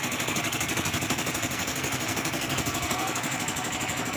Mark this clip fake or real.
fake